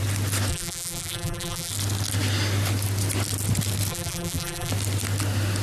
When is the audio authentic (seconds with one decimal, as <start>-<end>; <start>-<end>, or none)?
0.0-0.5; 1.7-3.9; 4.7-5.6